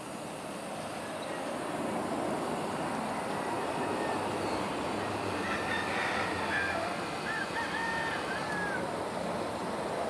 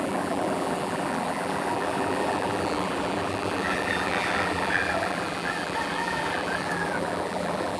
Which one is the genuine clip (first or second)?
first